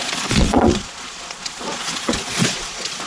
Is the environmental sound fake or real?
fake